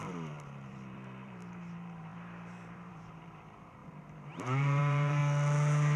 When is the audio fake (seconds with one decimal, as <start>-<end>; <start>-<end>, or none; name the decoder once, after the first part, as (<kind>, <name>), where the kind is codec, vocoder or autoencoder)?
0.0-5.2 (vocoder, BigVGAN v2)